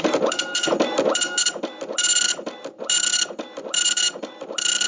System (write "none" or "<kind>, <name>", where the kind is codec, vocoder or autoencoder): none